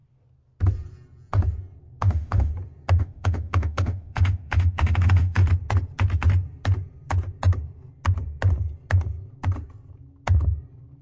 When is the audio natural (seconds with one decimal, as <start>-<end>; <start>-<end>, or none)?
0.0-2.0; 2.5-3.0; 5.4-11.0